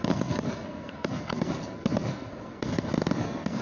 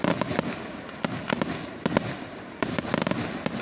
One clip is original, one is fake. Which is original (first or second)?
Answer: second